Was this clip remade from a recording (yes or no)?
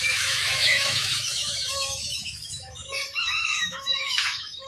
yes